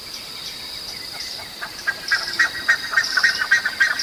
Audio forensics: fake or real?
fake